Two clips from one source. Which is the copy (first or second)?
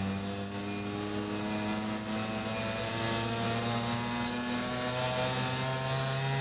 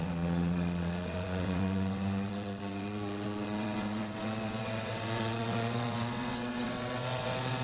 second